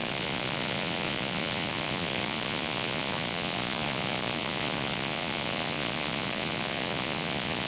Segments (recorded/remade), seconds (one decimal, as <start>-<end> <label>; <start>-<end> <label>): 0.0-7.7 remade